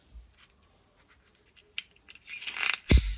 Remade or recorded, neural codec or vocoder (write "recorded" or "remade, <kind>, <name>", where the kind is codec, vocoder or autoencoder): recorded